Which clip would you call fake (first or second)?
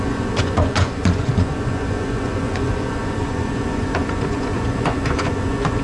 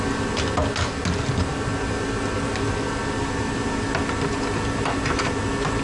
first